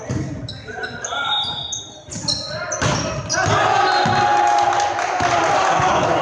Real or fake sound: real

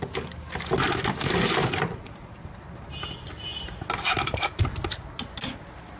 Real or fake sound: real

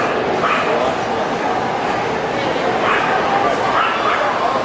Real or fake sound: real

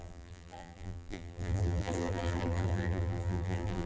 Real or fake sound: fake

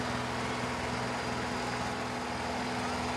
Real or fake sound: real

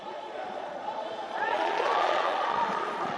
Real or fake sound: fake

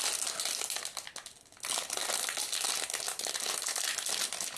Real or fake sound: real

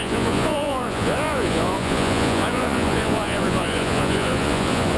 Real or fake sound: fake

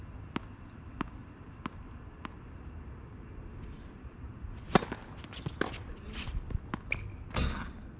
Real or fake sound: real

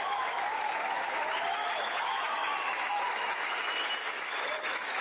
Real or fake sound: fake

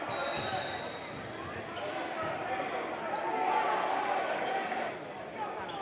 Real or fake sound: real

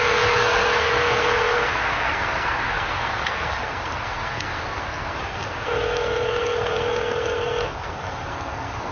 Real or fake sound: fake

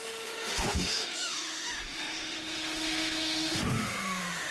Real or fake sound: fake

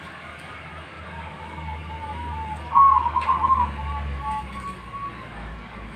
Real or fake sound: fake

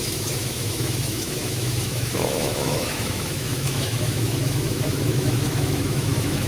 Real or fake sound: fake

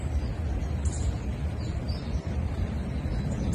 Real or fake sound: real